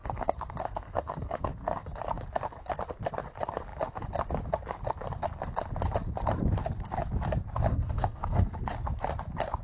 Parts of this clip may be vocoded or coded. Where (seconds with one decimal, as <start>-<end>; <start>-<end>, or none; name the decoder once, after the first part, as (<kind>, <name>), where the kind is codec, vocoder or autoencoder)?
0.0-1.8 (codec, SNAC); 7.7-8.4